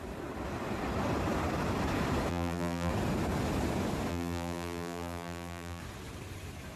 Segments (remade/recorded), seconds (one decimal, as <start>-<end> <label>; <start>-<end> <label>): 0.0-2.3 recorded; 2.3-2.9 remade; 2.9-4.1 recorded; 4.1-5.8 remade; 5.8-6.8 recorded